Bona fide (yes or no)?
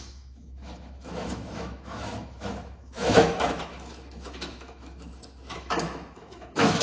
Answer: no